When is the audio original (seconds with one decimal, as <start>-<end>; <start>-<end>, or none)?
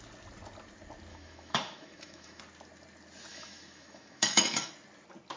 0.0-1.1; 2.4-3.3; 4.7-5.4